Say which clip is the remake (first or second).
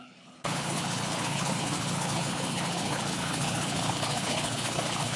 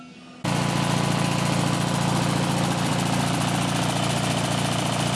first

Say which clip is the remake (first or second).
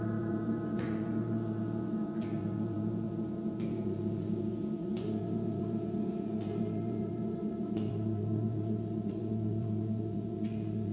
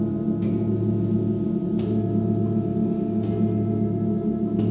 first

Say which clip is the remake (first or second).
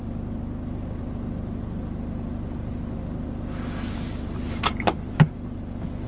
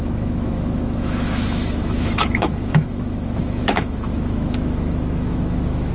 second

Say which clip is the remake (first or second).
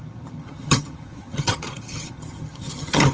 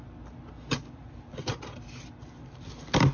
first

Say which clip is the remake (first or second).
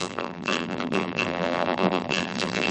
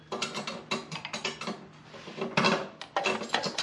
first